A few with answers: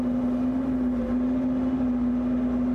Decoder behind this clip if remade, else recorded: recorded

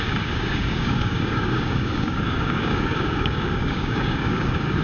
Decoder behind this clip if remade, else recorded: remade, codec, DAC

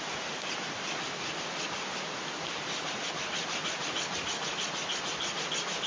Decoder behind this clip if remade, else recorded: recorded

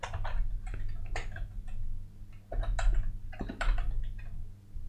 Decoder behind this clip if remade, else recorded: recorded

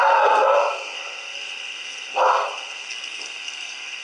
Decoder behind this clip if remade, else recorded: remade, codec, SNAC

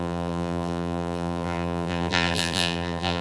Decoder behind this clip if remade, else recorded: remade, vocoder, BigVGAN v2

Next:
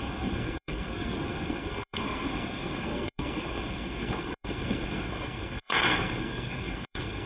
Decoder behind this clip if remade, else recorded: remade, codec, SNAC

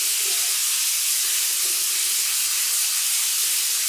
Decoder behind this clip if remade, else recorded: recorded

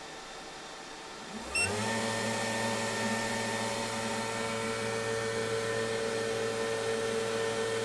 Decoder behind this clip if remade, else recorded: recorded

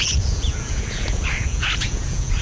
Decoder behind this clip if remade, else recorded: remade, vocoder, Vocos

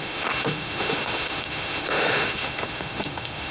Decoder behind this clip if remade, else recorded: remade, autoencoder, DAC-VAE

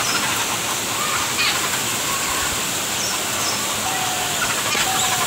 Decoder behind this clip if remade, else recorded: recorded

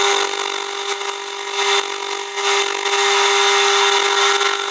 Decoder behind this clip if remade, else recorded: recorded